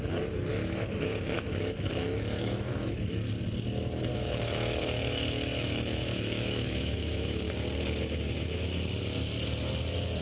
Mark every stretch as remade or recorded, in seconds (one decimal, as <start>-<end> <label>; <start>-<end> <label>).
0.0-0.5 recorded; 0.5-3.1 remade; 3.1-4.1 recorded; 4.1-7.5 remade; 7.5-10.2 recorded